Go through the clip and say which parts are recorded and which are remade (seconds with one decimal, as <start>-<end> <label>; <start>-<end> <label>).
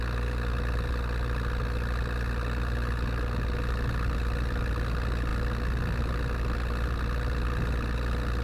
0.0-8.4 recorded